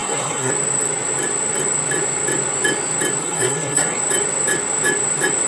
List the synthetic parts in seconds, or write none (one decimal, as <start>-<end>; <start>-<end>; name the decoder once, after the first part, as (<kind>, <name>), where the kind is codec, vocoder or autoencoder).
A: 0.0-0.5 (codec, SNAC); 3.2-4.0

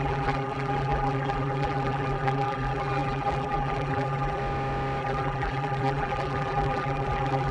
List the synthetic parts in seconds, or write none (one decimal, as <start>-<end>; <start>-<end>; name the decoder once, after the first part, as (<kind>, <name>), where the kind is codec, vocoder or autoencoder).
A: 0.0-4.4 (vocoder, BigVGAN v2); 5.0-7.5

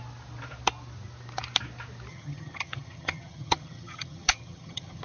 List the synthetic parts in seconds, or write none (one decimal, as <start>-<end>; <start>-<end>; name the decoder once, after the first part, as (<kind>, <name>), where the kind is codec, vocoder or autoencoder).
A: 2.1-5.0 (vocoder, HiFi-GAN)